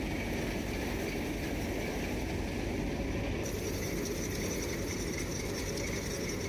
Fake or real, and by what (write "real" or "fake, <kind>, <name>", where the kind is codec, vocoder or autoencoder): real